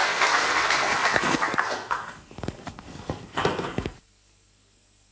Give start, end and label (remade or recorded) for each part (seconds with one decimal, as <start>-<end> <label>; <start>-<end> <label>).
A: 0.0-5.1 remade